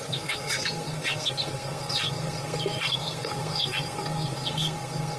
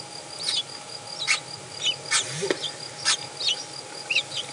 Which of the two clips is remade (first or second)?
first